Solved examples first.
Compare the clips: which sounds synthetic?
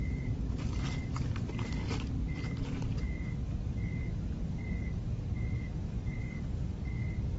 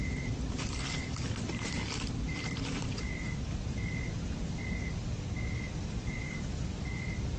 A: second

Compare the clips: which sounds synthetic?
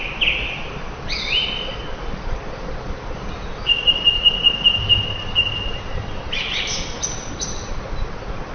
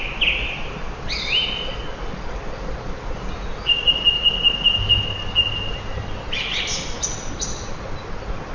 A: first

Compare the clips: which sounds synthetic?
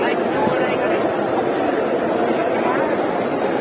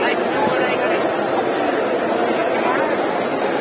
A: first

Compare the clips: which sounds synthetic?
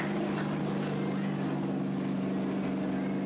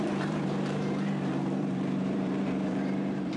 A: second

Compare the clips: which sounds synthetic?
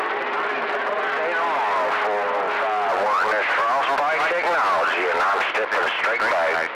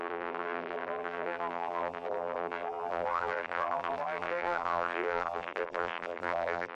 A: second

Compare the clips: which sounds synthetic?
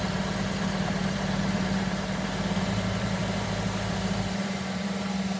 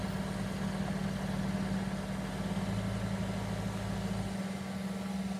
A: first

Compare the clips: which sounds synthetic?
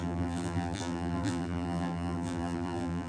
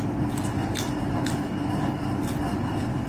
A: first